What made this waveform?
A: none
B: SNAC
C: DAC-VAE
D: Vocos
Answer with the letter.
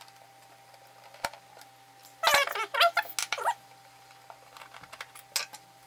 A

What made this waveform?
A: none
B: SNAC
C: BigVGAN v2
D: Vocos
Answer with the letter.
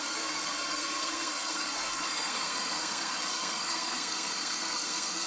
B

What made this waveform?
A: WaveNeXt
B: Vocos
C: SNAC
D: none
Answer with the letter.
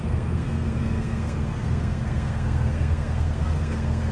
C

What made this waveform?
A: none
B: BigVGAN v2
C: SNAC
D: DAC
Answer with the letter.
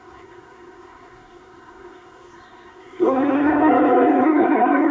C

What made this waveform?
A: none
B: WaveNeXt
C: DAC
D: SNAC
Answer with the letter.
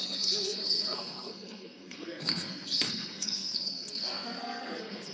D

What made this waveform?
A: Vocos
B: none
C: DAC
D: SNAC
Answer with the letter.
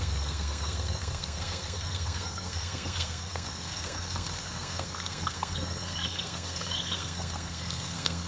D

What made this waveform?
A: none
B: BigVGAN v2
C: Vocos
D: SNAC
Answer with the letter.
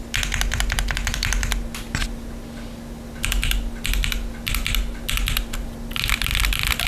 A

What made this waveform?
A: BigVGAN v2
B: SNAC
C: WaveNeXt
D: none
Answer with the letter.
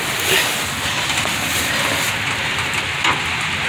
D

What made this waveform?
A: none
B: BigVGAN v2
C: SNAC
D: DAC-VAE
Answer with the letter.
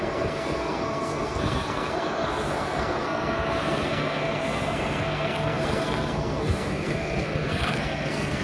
C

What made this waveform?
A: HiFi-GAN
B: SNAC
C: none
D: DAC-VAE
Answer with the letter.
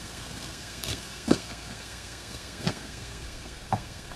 B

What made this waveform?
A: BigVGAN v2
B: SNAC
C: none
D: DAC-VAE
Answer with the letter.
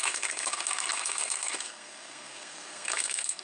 B